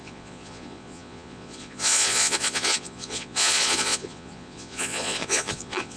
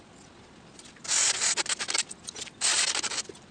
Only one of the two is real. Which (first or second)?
second